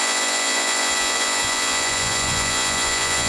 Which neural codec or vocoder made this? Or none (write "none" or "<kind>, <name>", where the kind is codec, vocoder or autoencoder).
vocoder, Vocos